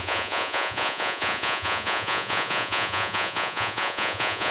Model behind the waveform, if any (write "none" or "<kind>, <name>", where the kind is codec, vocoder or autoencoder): vocoder, Vocos